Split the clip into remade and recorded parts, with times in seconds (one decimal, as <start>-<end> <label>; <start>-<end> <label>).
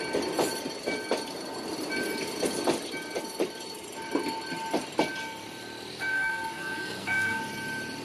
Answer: 0.0-6.1 recorded; 6.1-7.4 remade; 7.4-8.0 recorded